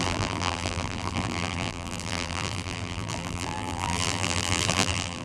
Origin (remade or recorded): remade